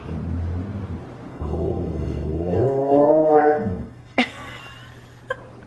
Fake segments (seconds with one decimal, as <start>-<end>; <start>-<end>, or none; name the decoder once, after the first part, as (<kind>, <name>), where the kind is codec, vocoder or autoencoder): 1.3-4.6 (codec, SNAC)